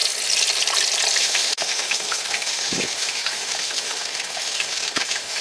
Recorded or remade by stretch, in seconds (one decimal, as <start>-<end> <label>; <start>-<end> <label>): 0.0-1.2 recorded; 1.2-5.4 remade